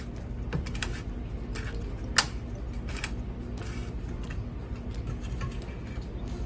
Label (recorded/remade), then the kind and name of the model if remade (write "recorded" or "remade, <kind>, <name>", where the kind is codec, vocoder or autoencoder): recorded